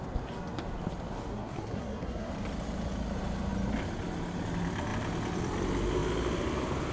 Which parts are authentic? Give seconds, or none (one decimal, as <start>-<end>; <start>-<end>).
0.0-1.3; 2.3-6.9